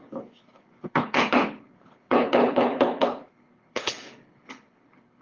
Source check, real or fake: fake